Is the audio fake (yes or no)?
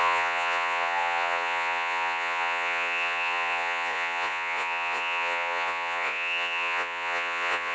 yes